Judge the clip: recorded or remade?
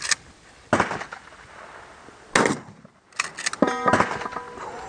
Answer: recorded